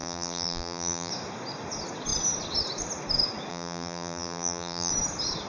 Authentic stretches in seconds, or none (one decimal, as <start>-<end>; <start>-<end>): 1.1-3.5; 4.9-5.5